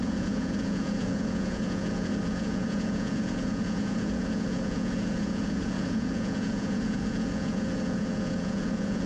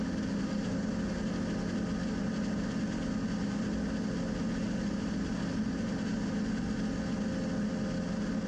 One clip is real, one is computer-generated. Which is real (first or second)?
second